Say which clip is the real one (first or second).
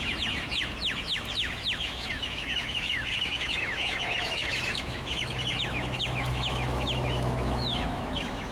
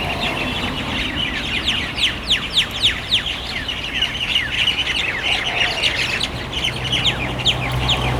second